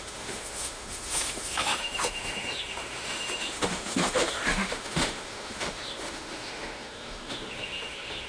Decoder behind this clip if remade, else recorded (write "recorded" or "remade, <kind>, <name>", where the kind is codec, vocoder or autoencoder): remade, autoencoder, DAC-VAE